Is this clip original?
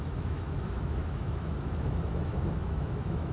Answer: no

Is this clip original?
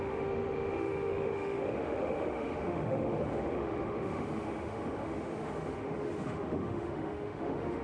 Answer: no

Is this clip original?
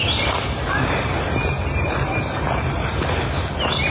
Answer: yes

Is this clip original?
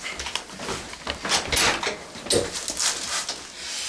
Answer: yes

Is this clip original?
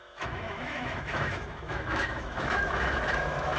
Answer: no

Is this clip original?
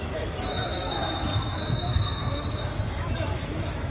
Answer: no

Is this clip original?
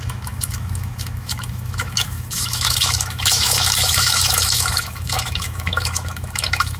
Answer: no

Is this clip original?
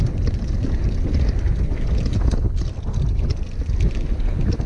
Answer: yes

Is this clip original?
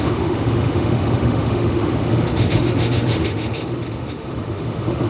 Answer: no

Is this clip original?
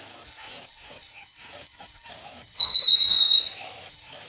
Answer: no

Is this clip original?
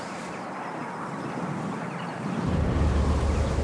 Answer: yes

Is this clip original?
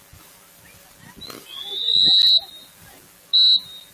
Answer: yes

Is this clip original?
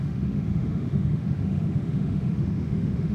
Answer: no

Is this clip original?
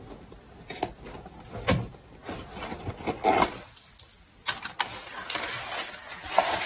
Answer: yes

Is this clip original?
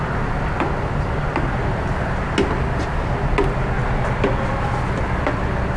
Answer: yes